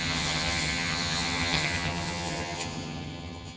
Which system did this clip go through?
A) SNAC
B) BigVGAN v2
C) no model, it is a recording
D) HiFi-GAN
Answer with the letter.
D